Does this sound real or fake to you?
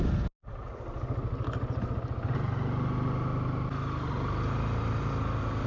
real